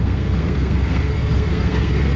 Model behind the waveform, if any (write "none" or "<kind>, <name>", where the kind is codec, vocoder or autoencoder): codec, SNAC